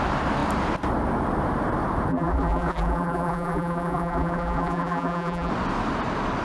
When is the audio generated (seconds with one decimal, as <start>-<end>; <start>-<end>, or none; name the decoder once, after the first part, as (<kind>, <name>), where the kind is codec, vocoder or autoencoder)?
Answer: 2.1-5.5 (vocoder, BigVGAN v2)